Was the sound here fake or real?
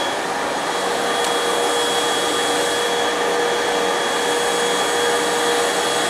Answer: real